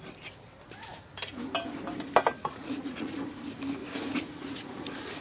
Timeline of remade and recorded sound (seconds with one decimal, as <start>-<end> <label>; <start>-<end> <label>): 0.0-2.4 recorded; 2.4-3.2 remade; 3.2-3.8 recorded; 3.8-4.8 remade; 4.8-5.2 recorded